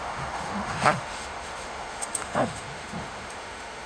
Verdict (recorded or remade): remade